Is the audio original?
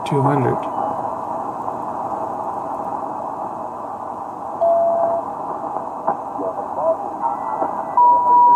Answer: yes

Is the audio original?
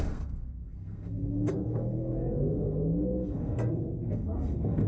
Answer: no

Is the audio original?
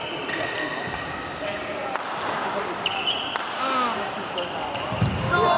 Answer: yes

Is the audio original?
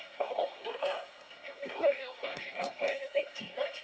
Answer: no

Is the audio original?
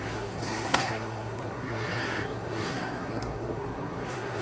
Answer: no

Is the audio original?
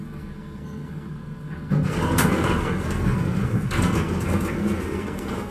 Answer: no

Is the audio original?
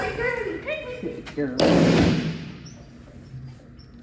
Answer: yes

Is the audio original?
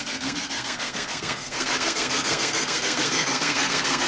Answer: no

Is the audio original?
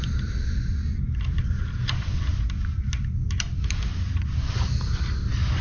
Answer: yes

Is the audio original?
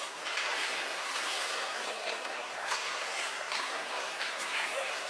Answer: no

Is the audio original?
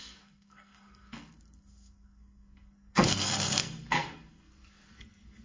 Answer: no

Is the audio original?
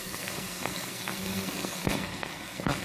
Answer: no